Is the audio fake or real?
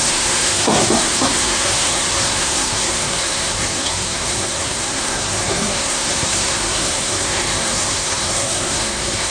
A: fake